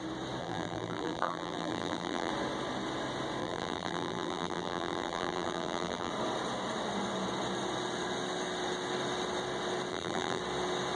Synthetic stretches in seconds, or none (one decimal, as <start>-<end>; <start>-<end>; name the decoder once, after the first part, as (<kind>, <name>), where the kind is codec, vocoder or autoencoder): 0.4-2.3 (vocoder, BigVGAN v2); 3.4-6.1; 9.9-10.4